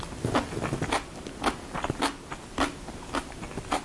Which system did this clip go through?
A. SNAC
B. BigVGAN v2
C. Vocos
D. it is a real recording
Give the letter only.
D